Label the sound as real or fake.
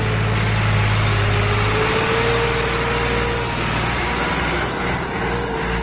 real